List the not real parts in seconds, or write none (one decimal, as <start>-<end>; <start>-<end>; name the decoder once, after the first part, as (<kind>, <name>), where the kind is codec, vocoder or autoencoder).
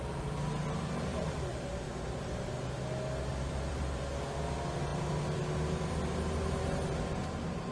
3.3-4.0 (vocoder, BigVGAN v2); 4.9-5.4